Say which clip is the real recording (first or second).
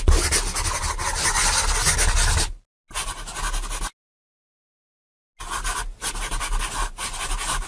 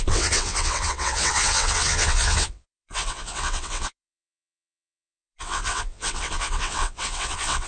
first